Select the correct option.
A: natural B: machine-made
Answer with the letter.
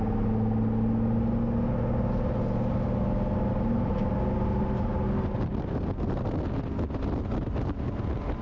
A